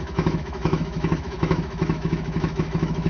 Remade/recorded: remade